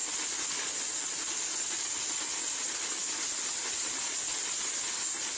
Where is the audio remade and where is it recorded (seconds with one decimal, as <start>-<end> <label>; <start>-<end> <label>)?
0.0-5.4 recorded